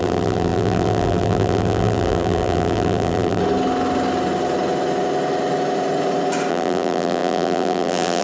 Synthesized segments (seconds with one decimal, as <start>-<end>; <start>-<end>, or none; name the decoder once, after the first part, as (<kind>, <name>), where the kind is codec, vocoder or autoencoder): 0.0-3.4 (vocoder, BigVGAN v2); 6.5-8.2